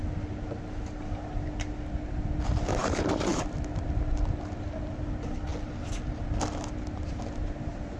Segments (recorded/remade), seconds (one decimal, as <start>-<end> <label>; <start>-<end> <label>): 0.0-8.0 recorded

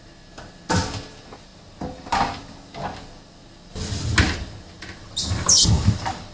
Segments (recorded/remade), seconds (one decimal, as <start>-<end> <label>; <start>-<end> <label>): 0.0-5.0 recorded; 5.0-5.6 remade; 5.6-6.3 recorded

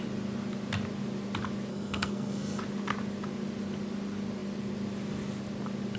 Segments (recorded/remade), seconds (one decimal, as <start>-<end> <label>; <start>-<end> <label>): 0.0-1.7 recorded; 1.7-2.6 remade; 2.6-6.0 recorded

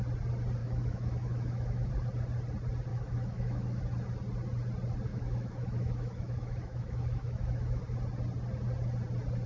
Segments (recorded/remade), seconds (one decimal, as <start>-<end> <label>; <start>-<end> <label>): 0.0-0.6 recorded; 0.6-1.9 remade; 1.9-2.9 recorded; 2.9-3.8 remade; 3.8-5.1 recorded; 5.1-7.8 remade; 7.8-9.5 recorded

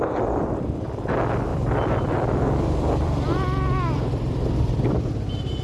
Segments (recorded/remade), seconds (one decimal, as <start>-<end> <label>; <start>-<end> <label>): 0.0-1.5 recorded; 1.5-4.9 remade; 4.9-5.6 recorded

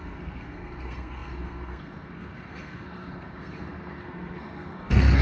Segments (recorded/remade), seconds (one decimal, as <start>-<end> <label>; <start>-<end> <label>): 0.0-5.2 remade

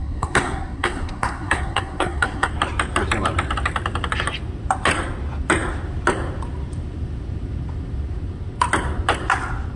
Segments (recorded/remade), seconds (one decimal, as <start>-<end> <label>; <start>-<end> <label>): 0.0-2.5 remade; 2.5-9.8 recorded

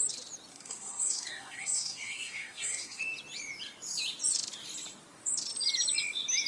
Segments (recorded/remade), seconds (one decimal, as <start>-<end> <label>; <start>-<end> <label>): 0.0-0.5 recorded; 0.5-3.0 remade; 3.0-6.5 recorded